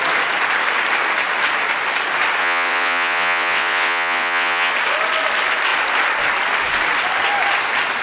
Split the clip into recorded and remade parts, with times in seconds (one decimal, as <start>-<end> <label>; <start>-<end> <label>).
0.0-2.4 recorded; 2.4-4.7 remade; 4.7-8.0 recorded